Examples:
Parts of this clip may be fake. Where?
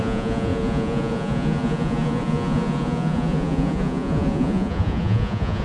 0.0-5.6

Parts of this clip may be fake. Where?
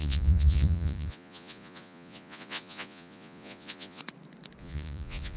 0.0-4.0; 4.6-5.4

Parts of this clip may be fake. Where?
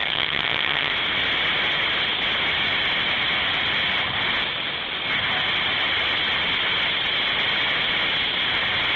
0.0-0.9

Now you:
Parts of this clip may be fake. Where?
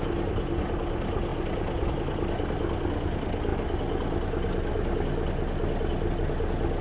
none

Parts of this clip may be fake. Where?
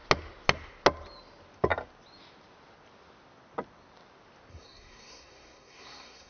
4.5-6.3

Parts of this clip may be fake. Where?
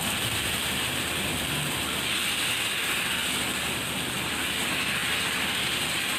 none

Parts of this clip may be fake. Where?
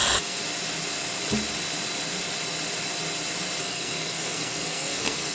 0.0-0.4; 3.6-5.3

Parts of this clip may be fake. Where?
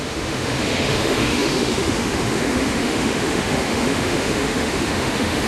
0.0-5.5